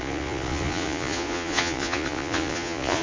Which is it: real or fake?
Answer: fake